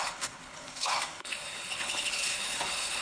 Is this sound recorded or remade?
remade